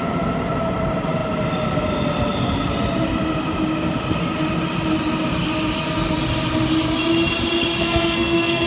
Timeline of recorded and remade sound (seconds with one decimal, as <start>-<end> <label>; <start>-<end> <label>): 0.0-7.8 recorded; 7.8-8.7 remade